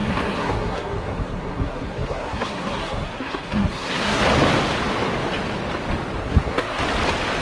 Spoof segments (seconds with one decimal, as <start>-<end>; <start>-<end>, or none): 0.0-4.2; 6.2-6.8